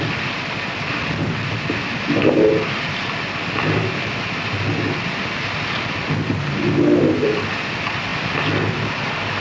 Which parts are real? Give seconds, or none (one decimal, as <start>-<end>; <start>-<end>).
0.0-9.4